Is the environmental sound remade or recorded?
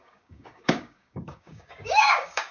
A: remade